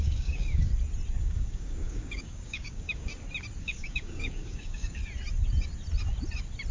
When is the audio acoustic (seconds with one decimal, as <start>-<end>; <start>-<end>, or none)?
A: 0.7-1.2; 3.1-3.6; 5.0-6.7